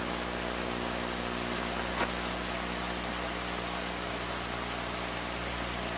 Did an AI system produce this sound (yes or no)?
no